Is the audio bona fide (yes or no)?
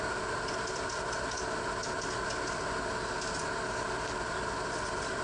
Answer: yes